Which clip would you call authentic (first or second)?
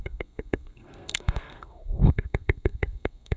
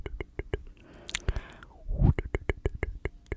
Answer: second